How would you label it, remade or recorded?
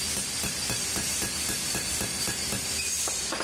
recorded